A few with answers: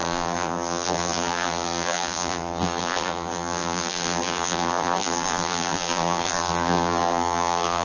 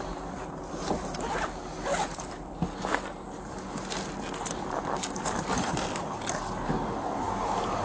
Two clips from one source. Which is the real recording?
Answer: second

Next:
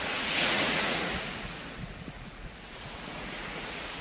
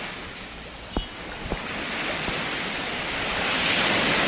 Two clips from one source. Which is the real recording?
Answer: second